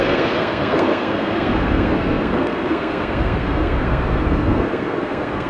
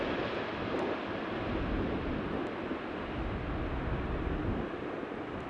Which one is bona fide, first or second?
second